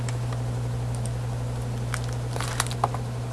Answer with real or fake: real